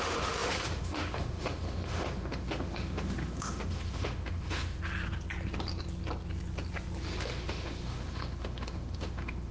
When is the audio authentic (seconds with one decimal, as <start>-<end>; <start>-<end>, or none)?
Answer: 4.8-7.2